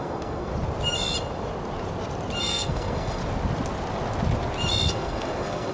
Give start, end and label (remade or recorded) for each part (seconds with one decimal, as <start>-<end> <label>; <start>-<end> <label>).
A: 0.0-0.5 remade; 0.5-2.4 recorded; 2.4-3.2 remade; 3.2-4.9 recorded; 4.9-5.7 remade